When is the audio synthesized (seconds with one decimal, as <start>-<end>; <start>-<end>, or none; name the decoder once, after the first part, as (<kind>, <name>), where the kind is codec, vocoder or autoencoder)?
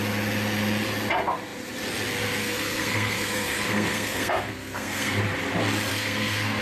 2.4-5.2 (codec, SNAC); 5.9-6.6